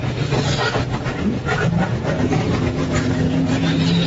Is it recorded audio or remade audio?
remade